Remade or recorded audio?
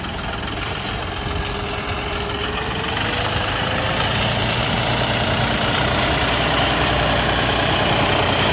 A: recorded